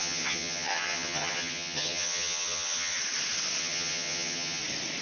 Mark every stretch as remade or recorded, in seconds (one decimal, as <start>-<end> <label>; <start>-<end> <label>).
0.0-3.0 remade; 3.0-3.6 recorded; 3.6-4.6 remade; 4.6-5.0 recorded